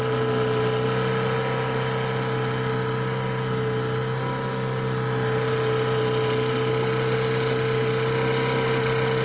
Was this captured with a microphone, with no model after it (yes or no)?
yes